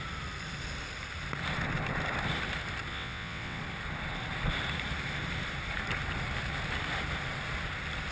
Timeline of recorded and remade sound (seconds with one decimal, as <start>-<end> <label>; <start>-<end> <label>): 0.0-2.9 recorded; 2.9-3.6 remade; 3.6-8.1 recorded